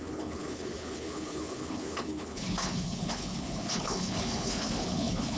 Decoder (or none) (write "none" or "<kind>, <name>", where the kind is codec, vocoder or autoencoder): codec, HILCodec